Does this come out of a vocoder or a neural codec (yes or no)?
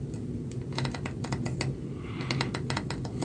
no